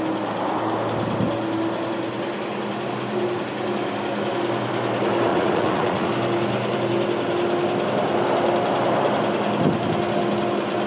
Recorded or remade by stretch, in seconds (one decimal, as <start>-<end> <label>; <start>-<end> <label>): 0.0-5.3 recorded; 5.3-6.1 remade; 6.1-10.9 recorded